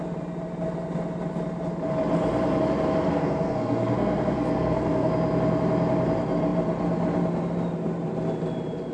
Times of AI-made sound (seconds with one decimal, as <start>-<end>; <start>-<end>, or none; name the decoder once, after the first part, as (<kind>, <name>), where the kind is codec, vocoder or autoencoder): 3.1-5.1 (codec, SNAC)